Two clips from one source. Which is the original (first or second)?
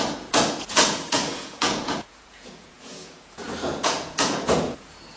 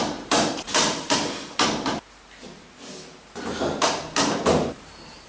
second